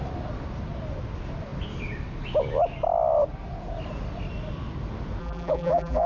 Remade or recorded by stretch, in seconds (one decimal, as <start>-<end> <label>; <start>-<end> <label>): 0.0-5.2 recorded; 5.2-6.1 remade